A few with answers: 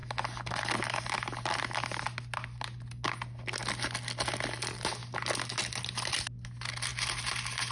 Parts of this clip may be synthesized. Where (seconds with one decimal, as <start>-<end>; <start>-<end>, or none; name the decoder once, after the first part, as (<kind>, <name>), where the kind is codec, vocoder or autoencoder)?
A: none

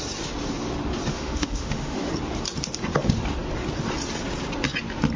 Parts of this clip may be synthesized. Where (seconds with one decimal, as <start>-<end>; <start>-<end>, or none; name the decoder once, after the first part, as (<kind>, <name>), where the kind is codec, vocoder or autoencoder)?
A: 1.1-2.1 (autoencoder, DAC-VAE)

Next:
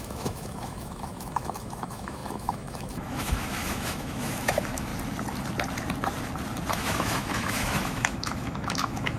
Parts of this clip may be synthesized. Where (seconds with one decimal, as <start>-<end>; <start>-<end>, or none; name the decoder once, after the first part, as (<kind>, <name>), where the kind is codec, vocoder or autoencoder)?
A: 0.0-4.9 (autoencoder, DAC-VAE); 6.7-9.2

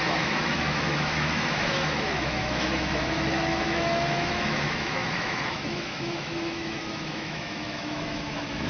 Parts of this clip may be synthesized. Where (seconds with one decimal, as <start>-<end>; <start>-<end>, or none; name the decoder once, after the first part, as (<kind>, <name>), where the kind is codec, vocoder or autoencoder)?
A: 0.0-8.7 (autoencoder, DAC-VAE)